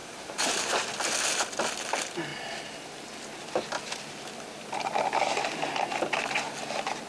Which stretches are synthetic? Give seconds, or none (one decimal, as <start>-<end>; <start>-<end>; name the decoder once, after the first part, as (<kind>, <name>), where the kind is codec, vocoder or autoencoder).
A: 0.0-0.7 (vocoder, BigVGAN v2)